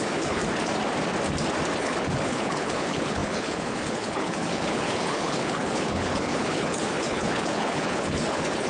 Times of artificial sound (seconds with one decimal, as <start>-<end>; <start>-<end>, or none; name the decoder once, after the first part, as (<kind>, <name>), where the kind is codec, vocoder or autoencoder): 0.0-0.4 (codec, HILCodec); 1.8-8.7